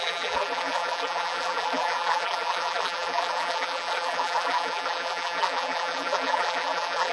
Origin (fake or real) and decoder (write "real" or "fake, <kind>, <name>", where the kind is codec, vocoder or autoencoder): fake, vocoder, BigVGAN v2